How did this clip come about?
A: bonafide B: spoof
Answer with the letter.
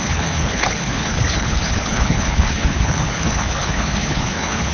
B